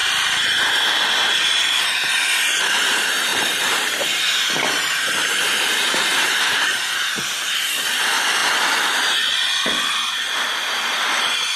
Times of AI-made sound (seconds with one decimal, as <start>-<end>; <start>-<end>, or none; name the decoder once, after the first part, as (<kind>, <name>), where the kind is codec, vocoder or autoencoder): 3.3-6.7 (vocoder, BigVGAN v2)